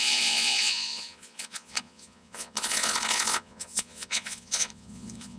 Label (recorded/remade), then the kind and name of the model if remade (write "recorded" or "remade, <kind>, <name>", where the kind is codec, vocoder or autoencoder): remade, vocoder, Vocos